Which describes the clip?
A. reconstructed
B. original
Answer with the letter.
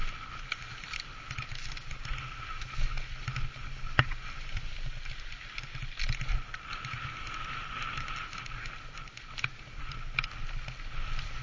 B